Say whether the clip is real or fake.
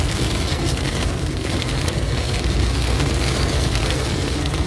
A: fake